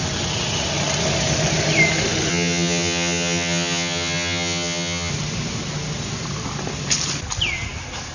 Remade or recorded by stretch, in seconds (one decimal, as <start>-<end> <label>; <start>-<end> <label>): 0.0-2.3 recorded; 2.3-5.1 remade; 5.1-8.1 recorded